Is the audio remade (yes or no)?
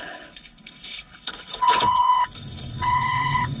yes